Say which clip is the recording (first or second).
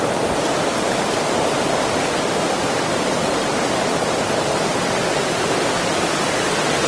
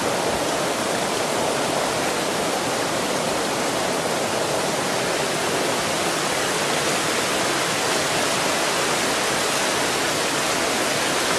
second